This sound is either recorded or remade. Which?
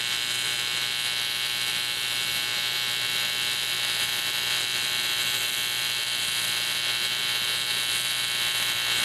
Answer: remade